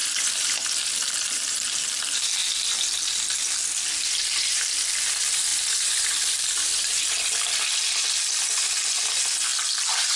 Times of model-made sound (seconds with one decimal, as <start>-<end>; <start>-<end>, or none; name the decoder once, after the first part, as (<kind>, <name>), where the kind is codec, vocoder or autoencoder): 0.0-1.3 (vocoder, BigVGAN v2); 5.5-7.0